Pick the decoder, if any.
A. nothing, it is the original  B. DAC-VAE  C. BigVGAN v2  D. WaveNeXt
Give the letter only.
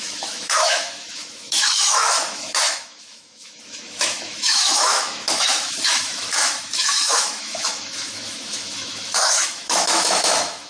B